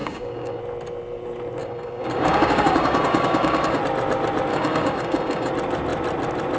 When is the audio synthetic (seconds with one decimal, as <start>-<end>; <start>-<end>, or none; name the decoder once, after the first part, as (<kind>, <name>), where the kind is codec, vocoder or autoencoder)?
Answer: 0.0-0.6 (codec, DAC); 1.6-3.8; 4.5-5.5